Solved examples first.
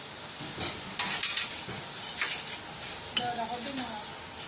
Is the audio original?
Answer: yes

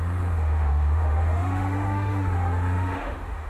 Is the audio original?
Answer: no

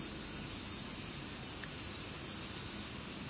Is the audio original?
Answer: yes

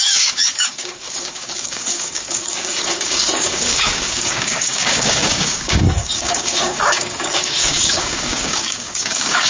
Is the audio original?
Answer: no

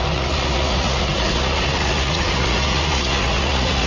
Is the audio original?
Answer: no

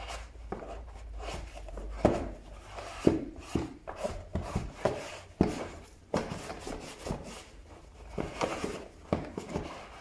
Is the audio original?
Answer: no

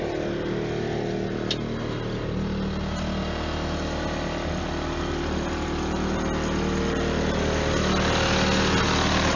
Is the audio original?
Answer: yes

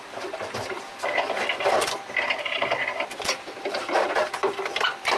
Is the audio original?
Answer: no